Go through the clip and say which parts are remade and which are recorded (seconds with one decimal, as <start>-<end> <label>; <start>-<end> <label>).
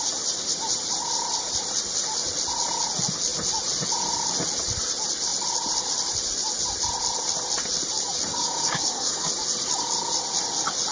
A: 0.0-8.3 recorded; 8.3-9.3 remade; 9.3-10.9 recorded